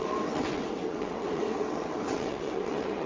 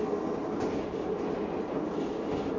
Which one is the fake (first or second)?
first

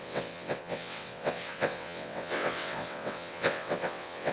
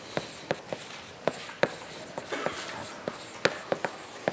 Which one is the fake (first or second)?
first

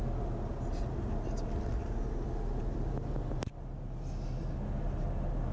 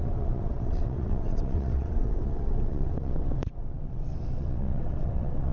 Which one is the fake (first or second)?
second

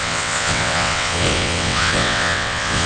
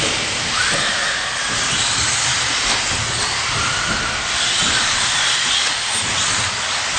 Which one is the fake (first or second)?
first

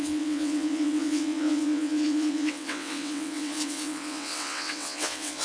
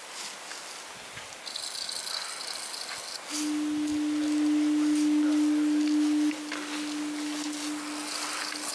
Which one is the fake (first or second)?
first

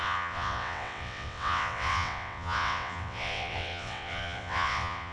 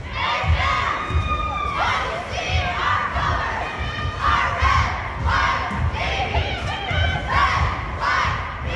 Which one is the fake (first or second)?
first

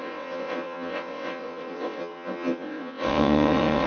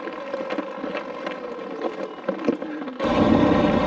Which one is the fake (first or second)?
first